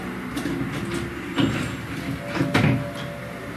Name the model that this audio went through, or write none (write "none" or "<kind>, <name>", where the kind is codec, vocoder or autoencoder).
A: none